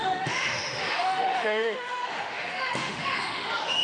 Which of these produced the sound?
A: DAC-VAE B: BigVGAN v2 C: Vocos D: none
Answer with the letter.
A